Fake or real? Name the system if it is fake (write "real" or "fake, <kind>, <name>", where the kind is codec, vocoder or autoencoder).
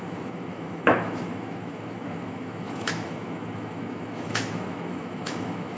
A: fake, autoencoder, DAC-VAE